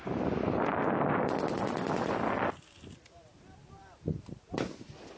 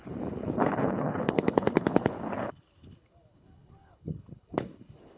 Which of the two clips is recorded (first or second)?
first